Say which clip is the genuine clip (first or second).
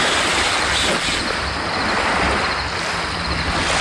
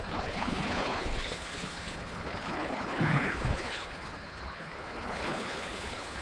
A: first